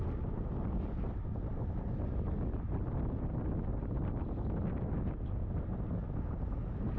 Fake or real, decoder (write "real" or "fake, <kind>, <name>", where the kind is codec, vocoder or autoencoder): real